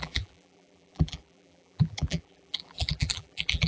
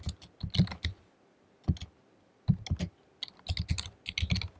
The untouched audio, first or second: second